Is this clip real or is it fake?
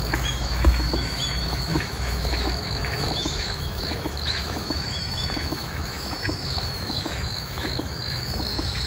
fake